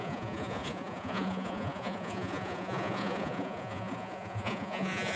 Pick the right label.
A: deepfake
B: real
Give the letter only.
A